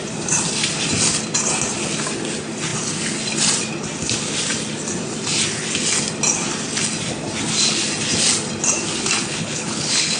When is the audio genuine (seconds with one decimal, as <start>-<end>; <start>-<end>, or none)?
0.0-9.2